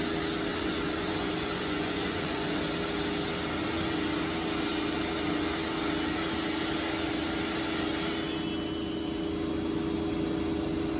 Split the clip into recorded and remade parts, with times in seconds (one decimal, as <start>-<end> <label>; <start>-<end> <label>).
0.0-0.5 recorded; 0.5-2.6 remade; 2.6-11.0 recorded